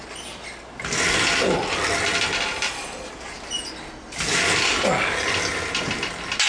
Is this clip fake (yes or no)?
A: no